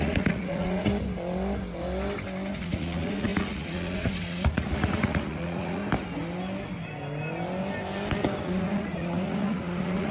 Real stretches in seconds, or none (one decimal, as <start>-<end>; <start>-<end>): 0.9-2.6; 5.8-8.4

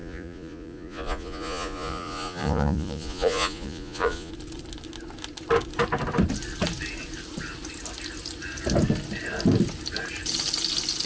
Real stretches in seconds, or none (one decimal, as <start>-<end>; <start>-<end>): 4.3-11.1

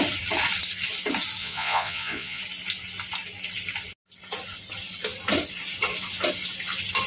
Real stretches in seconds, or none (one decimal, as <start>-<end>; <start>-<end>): 0.0-1.4; 2.4-7.1

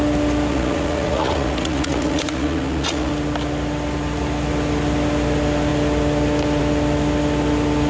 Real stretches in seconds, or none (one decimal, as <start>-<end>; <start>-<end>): 0.0-0.5; 3.1-7.9

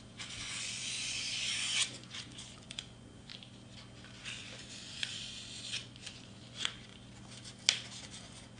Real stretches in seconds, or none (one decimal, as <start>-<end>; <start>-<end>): 3.3-4.2; 6.9-8.0

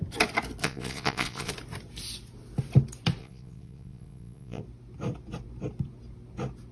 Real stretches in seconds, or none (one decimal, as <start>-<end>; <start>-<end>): 0.0-0.6; 1.5-3.2; 4.6-6.7

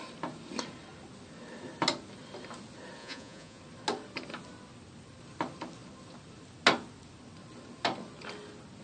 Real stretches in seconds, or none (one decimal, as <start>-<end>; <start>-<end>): 0.0-3.0; 3.6-8.8

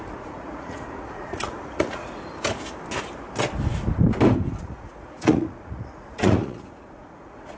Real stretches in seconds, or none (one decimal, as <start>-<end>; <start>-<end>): 2.3-4.6